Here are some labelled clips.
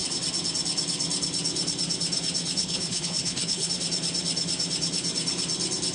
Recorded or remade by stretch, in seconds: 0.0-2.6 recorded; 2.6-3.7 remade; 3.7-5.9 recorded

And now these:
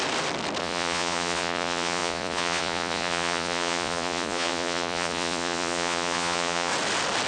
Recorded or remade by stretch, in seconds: 0.0-0.6 recorded; 0.6-6.7 remade; 6.7-7.3 recorded

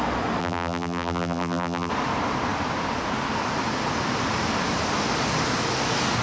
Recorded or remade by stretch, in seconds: 0.0-0.4 recorded; 0.4-1.9 remade; 1.9-6.2 recorded

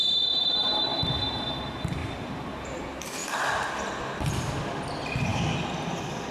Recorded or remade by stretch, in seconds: 0.0-2.0 recorded; 2.0-2.8 remade; 2.8-6.3 recorded

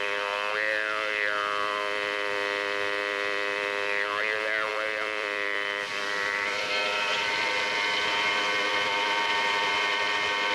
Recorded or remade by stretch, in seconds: 0.0-4.7 recorded; 4.7-7.5 remade; 7.5-8.7 recorded; 8.7-9.7 remade; 9.7-10.5 recorded

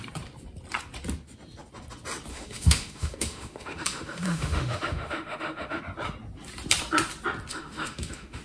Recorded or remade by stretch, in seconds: 0.0-2.3 recorded; 2.3-5.8 remade; 5.8-7.5 recorded; 7.5-8.4 remade